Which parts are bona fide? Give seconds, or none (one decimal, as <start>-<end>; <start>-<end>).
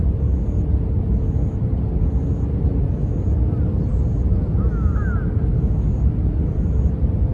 0.0-7.3